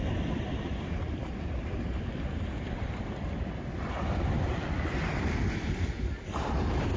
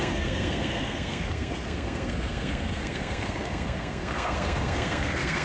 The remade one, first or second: second